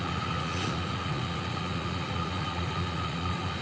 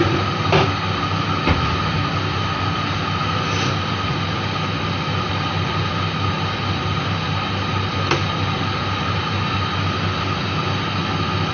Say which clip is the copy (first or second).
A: first